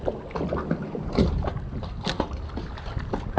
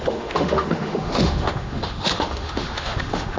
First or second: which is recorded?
first